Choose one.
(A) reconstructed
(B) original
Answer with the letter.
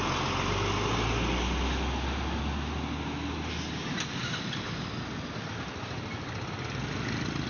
B